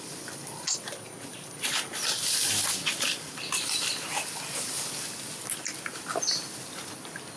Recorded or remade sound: recorded